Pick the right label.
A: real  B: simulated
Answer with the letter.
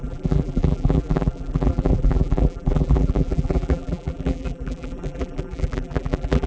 B